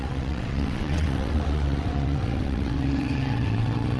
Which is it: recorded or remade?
remade